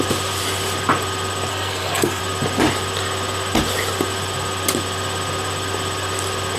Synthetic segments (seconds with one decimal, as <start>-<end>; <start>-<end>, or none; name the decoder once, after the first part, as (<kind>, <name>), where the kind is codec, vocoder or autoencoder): 1.5-2.2 (codec, SNAC)